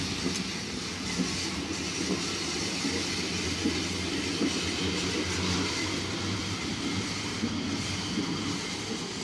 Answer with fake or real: real